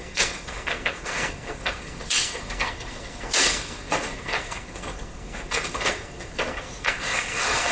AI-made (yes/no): yes